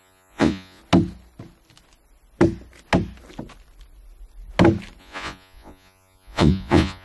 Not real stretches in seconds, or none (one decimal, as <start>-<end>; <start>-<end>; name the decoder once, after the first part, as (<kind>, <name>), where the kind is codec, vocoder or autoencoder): 0.0-0.8 (vocoder, Vocos); 5.0-7.0